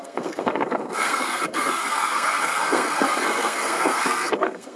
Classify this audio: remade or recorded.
remade